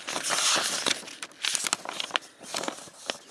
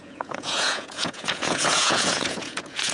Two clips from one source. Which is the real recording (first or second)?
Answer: first